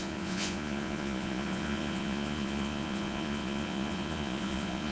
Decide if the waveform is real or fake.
fake